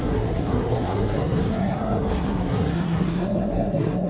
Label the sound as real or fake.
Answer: fake